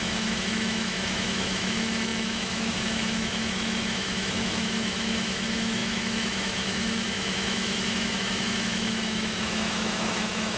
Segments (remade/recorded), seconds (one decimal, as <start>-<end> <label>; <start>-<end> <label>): 0.0-10.6 remade